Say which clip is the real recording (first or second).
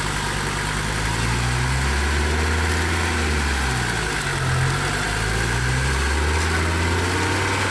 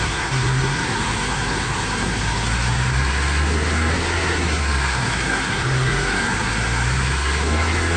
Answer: first